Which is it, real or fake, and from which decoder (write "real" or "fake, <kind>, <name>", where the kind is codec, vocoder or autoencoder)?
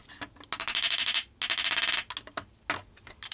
real